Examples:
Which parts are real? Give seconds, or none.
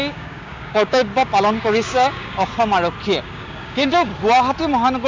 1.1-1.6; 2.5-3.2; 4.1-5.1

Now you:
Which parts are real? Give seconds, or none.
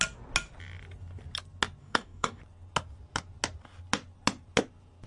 0.0-1.8; 2.4-5.1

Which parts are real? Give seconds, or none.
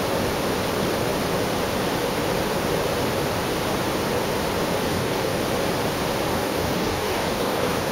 0.0-4.9; 5.4-6.3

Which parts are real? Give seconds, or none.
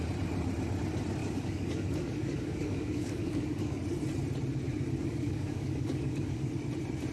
0.0-1.2; 3.8-5.0; 6.5-7.1